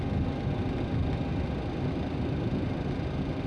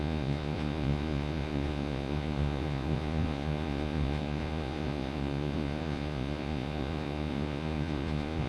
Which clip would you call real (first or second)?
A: first